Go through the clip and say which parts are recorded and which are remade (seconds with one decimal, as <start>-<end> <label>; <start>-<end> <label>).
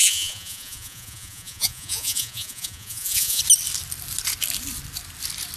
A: 0.0-3.4 remade; 3.4-5.6 recorded